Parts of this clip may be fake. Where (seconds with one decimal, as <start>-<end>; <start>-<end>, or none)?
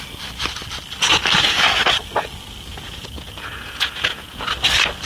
2.7-4.4